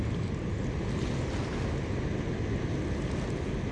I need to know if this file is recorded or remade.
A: recorded